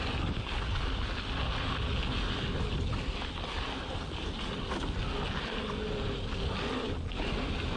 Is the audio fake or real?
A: real